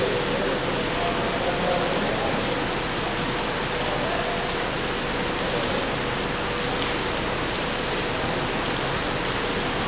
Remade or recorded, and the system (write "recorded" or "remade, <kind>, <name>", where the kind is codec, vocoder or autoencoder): recorded